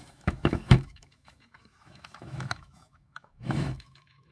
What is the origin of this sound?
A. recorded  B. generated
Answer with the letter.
B